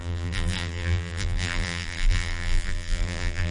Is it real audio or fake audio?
fake